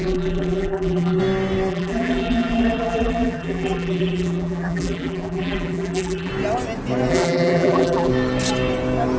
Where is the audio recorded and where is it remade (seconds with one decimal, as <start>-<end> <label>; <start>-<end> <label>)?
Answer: 0.0-1.2 remade; 1.2-1.7 recorded; 1.7-6.3 remade; 6.3-7.1 recorded; 7.1-8.1 remade; 8.1-9.2 recorded